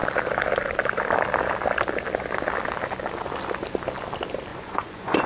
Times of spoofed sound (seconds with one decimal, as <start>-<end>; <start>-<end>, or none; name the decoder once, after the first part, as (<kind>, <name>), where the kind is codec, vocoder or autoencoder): 4.5-5.3 (vocoder, Vocos)